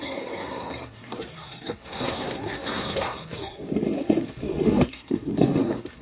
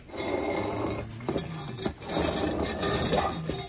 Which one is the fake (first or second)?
first